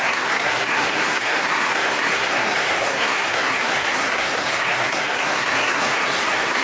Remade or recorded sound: remade